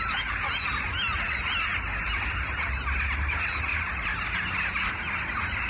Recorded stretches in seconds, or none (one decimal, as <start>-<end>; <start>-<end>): 0.0-5.7